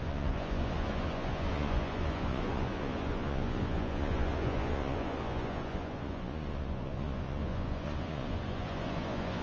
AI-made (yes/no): yes